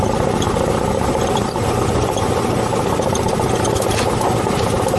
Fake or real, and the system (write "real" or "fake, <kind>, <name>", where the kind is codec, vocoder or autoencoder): real